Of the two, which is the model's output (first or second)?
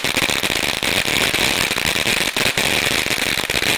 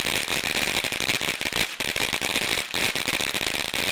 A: second